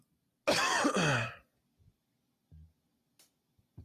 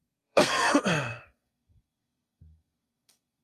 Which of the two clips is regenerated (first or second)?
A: second